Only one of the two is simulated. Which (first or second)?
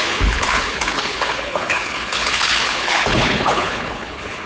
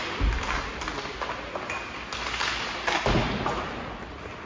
first